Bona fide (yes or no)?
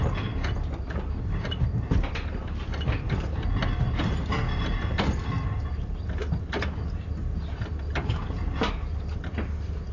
yes